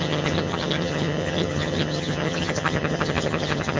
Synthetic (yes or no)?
yes